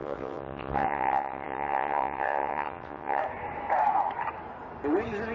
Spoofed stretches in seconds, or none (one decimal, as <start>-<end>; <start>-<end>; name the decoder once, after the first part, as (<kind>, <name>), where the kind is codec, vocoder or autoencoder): 0.0-3.2 (vocoder, WaveNeXt)